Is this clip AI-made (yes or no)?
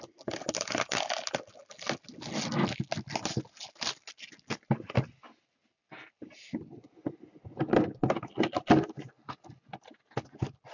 no